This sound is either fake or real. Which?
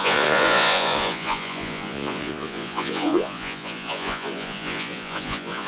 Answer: fake